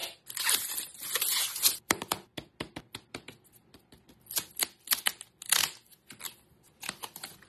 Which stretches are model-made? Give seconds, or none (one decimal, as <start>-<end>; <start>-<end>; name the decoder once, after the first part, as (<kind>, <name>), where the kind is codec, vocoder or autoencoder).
0.5-2.3 (vocoder, BigVGAN v2); 6.8-7.5

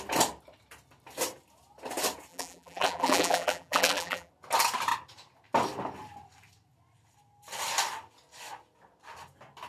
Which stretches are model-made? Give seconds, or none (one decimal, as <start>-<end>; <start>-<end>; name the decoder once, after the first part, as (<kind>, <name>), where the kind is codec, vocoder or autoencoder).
2.3-4.3 (vocoder, BigVGAN v2)